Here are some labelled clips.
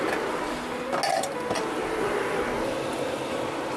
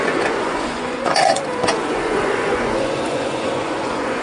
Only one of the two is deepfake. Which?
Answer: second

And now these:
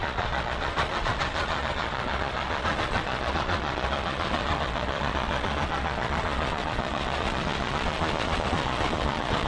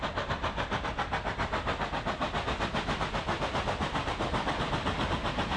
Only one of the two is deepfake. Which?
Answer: first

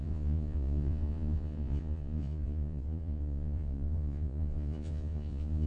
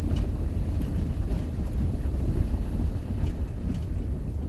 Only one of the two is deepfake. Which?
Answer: first